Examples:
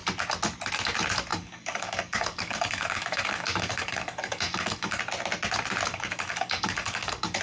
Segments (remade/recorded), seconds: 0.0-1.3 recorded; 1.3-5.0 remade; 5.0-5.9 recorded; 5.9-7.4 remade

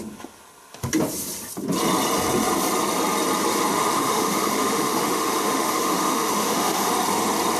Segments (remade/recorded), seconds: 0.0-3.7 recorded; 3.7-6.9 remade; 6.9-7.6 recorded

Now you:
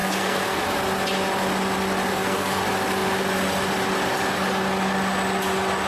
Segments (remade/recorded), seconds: 0.0-0.6 remade; 0.6-2.1 recorded; 2.1-2.6 remade; 2.6-5.9 recorded

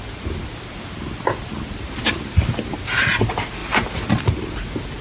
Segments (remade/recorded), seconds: 0.0-5.0 recorded

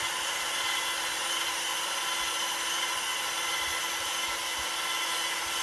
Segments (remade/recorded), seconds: 0.0-5.6 recorded

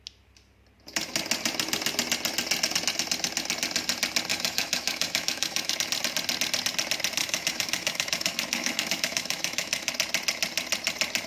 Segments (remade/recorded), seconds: 0.0-4.3 recorded; 4.3-5.7 remade; 5.7-7.2 recorded; 7.2-9.9 remade; 9.9-11.3 recorded